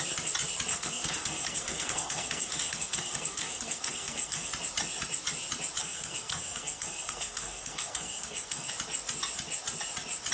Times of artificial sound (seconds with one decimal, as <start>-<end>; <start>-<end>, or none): 0.7-4.5; 5.8-8.7